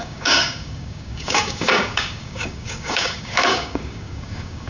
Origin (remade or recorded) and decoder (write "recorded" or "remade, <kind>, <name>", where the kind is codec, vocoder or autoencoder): remade, codec, DAC